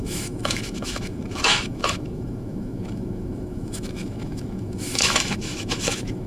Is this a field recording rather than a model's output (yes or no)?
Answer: no